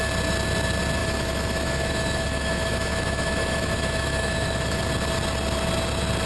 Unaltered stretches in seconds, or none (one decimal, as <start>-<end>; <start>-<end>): 0.0-1.0; 4.8-6.3